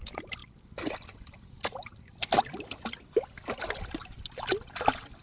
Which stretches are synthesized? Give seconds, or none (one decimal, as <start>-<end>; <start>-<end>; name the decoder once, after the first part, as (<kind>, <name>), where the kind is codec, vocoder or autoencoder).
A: none